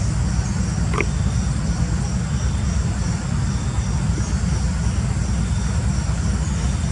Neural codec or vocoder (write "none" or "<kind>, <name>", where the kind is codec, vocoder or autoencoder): none